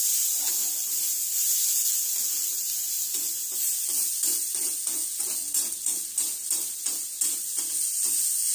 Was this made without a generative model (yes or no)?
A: yes